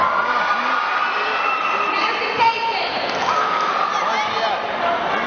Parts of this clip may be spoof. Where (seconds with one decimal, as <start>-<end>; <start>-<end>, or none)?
2.9-3.7